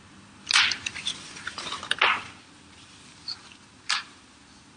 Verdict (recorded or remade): recorded